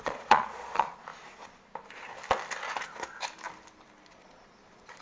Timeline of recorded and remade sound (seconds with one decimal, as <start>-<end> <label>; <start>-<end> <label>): 0.0-1.1 remade; 1.1-4.1 recorded; 4.1-5.0 remade